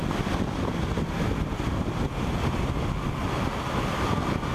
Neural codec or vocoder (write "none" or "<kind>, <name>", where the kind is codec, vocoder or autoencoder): none